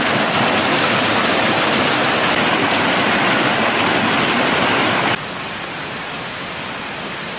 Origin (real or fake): real